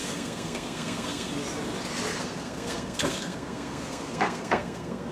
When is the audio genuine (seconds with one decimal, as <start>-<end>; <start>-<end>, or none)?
1.3-2.1